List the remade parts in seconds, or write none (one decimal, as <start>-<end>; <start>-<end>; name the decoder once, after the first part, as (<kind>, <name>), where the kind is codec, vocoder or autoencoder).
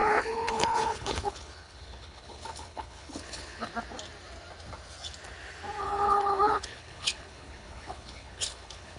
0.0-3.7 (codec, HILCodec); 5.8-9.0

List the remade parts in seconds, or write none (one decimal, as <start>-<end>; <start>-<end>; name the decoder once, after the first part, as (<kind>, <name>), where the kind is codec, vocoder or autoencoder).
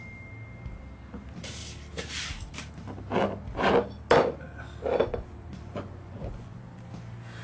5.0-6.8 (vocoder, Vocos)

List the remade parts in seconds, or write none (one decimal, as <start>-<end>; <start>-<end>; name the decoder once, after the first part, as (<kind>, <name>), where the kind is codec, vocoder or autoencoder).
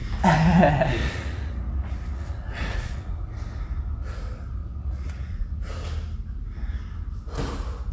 1.0-3.1 (vocoder, Vocos); 4.6-5.6